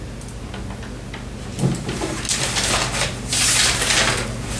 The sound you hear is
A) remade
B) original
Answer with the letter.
B